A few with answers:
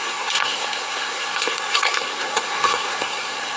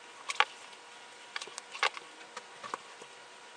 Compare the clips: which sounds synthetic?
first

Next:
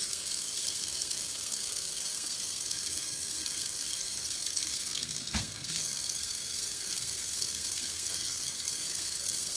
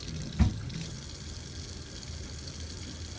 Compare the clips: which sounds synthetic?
first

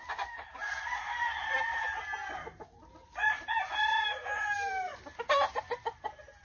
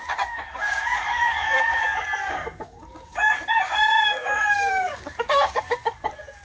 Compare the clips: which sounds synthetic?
second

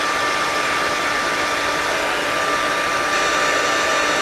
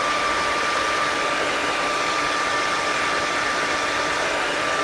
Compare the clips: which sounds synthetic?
second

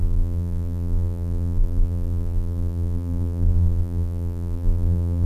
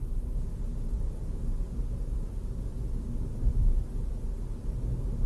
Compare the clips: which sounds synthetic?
first